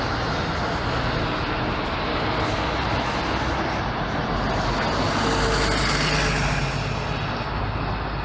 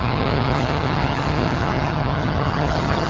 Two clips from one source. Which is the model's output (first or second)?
second